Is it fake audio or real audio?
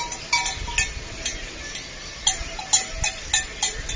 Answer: real